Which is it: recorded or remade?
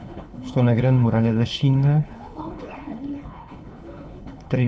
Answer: remade